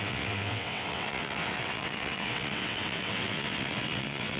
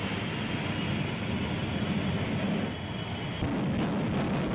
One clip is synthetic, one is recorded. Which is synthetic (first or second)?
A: first